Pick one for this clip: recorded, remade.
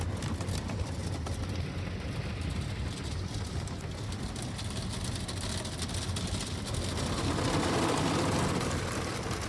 recorded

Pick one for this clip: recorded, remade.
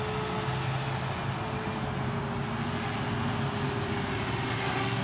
recorded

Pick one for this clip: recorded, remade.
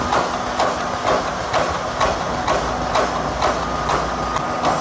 recorded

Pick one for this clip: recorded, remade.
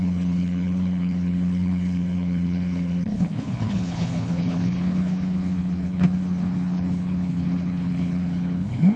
remade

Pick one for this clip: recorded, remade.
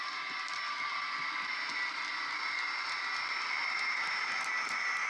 recorded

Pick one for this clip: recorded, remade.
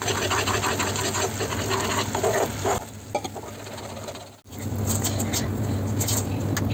recorded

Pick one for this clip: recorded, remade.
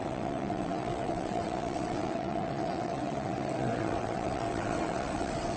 remade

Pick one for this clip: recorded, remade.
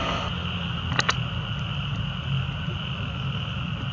recorded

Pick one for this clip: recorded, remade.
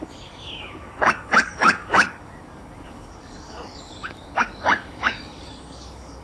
remade